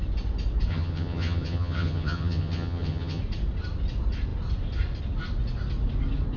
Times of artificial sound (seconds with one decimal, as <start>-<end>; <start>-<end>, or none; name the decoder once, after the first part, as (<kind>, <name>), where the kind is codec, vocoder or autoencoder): 0.7-3.2 (vocoder, HiFi-GAN)